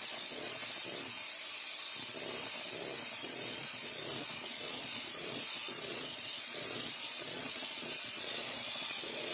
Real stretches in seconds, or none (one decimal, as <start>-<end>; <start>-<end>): 0.6-3.2